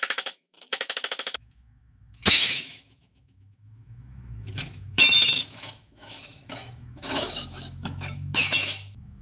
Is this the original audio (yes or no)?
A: no